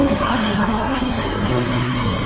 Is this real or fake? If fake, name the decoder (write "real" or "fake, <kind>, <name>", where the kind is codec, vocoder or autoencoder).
fake, codec, SNAC